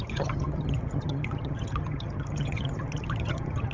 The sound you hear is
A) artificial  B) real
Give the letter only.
A